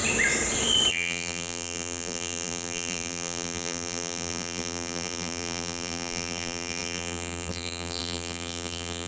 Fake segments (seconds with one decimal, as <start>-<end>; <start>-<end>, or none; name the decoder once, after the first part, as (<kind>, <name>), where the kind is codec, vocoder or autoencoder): 0.9-9.1 (vocoder, BigVGAN v2)